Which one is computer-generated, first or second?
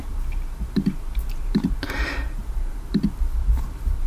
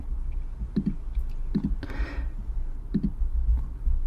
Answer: first